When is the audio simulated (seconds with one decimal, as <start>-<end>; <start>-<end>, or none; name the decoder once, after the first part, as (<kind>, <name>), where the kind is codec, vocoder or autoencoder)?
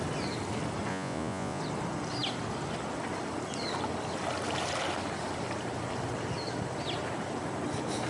0.9-1.6 (vocoder, Vocos)